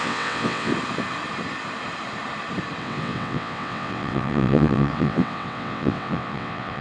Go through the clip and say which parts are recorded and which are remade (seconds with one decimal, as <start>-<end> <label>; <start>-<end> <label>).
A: 0.0-0.7 remade; 0.7-2.8 recorded; 2.8-6.8 remade